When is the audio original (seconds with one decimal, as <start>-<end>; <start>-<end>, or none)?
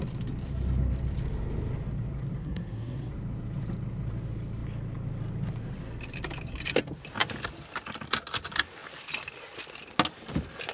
0.0-2.4; 3.1-10.7